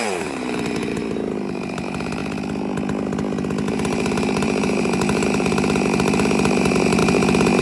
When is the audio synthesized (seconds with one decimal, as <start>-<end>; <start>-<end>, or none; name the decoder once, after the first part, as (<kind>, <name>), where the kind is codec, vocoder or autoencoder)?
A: 0.0-2.2 (vocoder, BigVGAN v2); 3.7-7.6